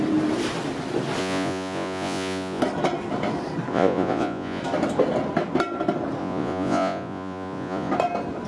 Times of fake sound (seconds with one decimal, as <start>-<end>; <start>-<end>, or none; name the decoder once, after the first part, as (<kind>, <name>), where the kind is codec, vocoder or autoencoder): 1.2-2.6 (vocoder, Vocos); 3.7-4.6; 6.2-7.9